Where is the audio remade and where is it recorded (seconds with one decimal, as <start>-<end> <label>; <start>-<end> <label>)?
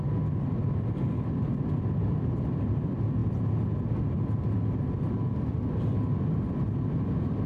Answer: 0.0-0.6 recorded; 0.6-2.8 remade; 2.8-7.5 recorded